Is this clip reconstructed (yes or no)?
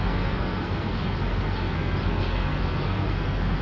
yes